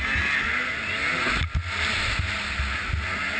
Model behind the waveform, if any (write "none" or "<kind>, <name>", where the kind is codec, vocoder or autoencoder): none